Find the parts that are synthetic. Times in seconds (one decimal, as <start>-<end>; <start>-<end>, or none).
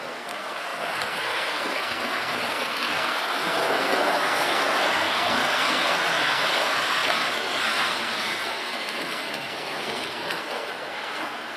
0.0-11.6